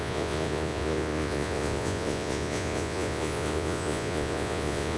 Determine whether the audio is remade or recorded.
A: remade